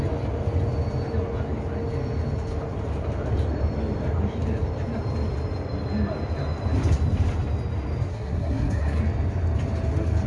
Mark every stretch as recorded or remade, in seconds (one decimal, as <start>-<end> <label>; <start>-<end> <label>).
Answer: 0.0-8.1 recorded; 8.1-9.0 remade; 9.0-10.3 recorded